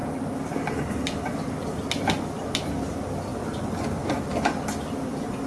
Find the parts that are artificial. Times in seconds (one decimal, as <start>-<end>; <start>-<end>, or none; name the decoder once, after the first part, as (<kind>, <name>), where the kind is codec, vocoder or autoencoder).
none